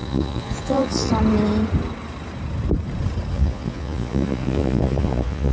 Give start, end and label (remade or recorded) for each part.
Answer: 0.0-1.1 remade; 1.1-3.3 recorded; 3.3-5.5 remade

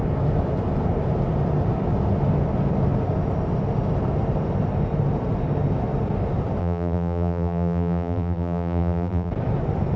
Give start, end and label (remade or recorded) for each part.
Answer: 0.0-6.6 recorded; 6.6-9.3 remade; 9.3-10.0 recorded

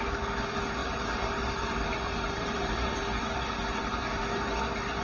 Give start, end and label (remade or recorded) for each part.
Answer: 0.0-0.8 recorded; 0.8-3.0 remade; 3.0-5.0 recorded

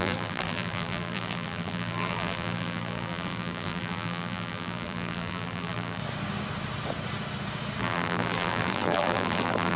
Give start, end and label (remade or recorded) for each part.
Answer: 0.0-6.0 remade; 6.0-7.8 recorded; 7.8-9.8 remade